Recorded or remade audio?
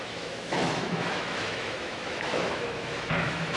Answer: remade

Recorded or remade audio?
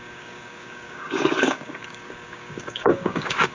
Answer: remade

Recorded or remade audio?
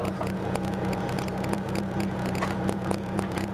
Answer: remade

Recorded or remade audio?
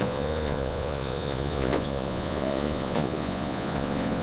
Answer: remade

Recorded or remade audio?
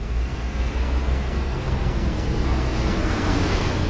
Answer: remade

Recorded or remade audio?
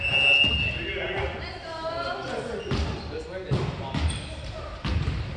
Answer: recorded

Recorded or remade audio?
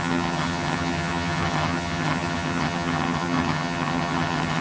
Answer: remade